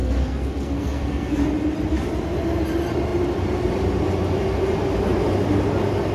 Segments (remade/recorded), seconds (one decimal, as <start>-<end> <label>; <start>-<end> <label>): 0.0-1.4 remade; 1.4-6.1 recorded